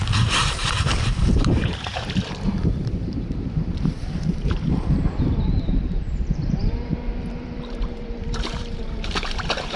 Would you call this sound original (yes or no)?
no